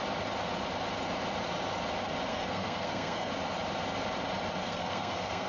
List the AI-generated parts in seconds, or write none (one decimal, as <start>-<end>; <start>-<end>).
2.3-3.3; 4.6-5.5